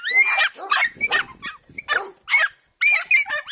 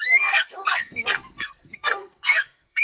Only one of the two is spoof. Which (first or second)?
second